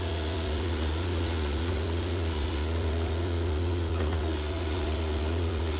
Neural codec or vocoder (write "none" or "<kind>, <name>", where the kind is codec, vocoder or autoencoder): vocoder, Vocos